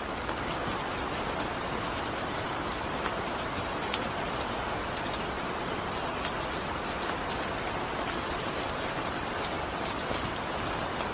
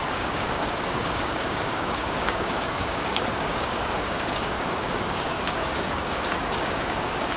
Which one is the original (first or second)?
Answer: first